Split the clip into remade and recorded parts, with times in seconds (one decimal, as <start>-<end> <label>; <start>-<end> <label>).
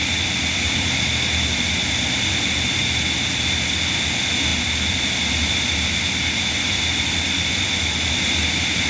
0.0-8.9 recorded